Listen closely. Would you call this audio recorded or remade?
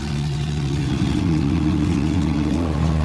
remade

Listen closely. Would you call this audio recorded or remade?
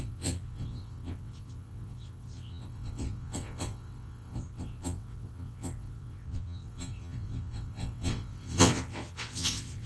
remade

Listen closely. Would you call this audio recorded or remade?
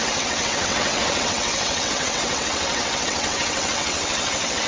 remade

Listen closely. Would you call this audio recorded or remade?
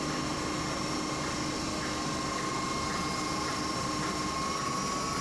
recorded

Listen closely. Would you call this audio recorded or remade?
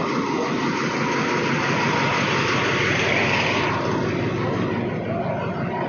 recorded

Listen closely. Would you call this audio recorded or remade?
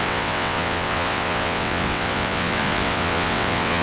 remade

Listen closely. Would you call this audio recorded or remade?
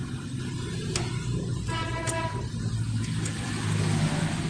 recorded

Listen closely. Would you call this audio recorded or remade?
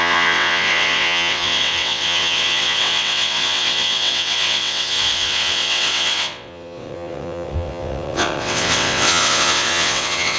remade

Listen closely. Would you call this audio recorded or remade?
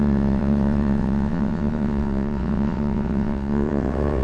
remade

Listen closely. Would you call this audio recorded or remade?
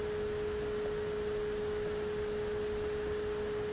recorded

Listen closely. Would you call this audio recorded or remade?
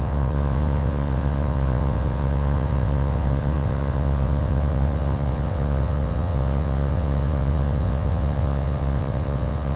remade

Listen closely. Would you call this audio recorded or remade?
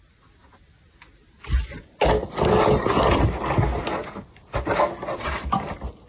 recorded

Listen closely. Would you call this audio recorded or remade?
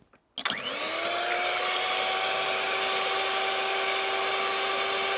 recorded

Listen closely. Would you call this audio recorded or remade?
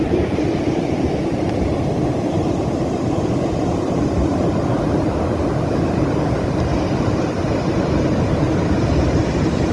recorded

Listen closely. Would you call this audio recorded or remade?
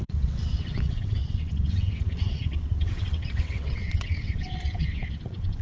remade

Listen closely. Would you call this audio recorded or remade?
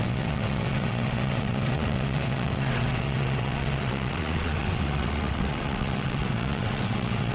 remade